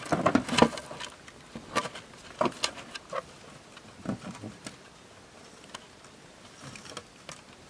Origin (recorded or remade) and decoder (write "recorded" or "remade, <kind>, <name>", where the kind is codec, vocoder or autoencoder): recorded